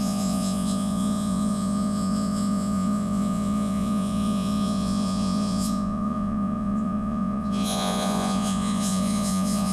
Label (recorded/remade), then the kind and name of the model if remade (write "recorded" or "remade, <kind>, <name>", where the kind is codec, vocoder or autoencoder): remade, vocoder, Vocos